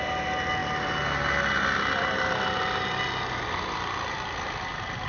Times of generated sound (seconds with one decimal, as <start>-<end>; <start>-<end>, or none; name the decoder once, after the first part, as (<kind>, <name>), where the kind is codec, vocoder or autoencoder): none